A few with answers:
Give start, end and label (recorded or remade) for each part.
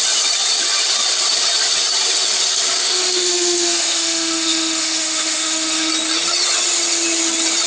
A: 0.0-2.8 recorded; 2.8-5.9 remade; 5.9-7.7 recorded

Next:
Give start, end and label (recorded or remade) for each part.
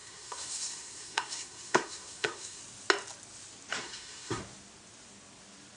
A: 0.0-2.6 remade; 2.6-3.8 recorded; 3.8-4.4 remade; 4.4-5.8 recorded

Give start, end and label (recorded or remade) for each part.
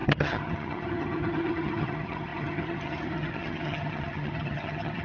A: 0.0-5.0 remade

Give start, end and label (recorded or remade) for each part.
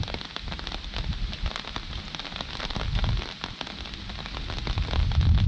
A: 0.0-5.5 recorded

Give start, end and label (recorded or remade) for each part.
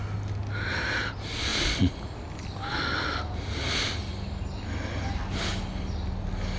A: 0.0-6.6 recorded